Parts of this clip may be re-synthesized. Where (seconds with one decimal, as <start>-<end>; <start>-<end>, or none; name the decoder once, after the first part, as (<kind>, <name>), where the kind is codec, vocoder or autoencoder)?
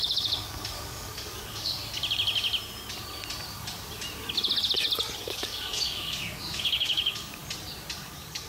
0.0-1.8 (codec, DAC); 5.2-7.4; 8.0-8.5